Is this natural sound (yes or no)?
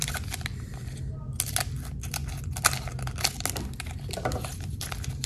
yes